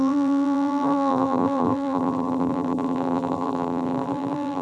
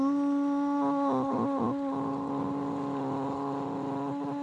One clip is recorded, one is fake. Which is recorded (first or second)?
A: second